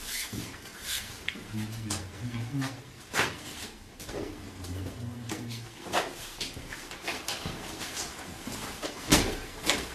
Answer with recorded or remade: remade